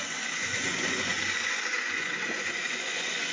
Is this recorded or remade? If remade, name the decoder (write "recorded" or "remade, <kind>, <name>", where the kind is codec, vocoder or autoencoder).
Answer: remade, vocoder, Vocos